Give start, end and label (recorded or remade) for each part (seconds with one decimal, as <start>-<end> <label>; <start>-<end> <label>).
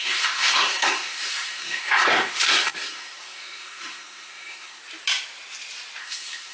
0.0-4.8 remade; 4.8-6.0 recorded; 6.0-6.5 remade